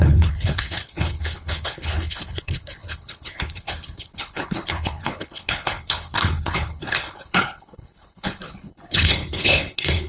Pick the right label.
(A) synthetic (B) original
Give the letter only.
A